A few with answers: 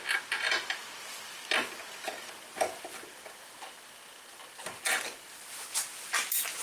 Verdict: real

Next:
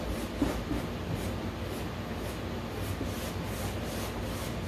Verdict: real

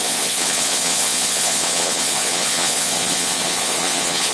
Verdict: fake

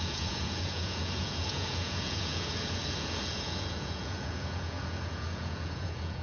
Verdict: fake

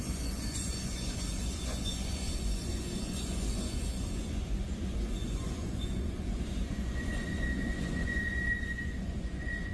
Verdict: fake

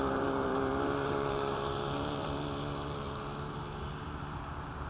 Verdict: fake